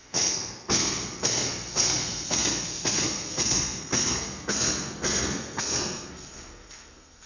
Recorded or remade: remade